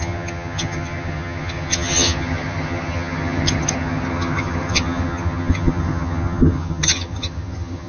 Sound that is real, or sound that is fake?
fake